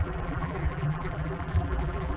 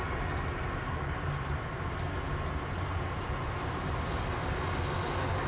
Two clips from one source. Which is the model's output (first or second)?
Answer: first